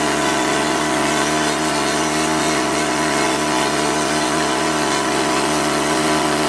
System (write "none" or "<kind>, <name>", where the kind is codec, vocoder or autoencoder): vocoder, Vocos